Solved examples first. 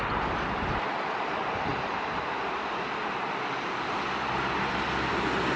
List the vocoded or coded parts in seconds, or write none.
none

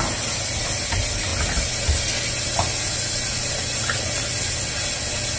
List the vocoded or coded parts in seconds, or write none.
none